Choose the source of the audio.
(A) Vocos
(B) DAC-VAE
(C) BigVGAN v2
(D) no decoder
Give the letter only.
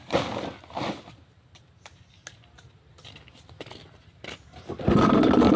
D